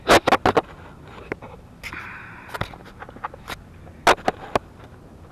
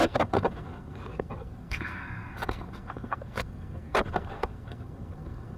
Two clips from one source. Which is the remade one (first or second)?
second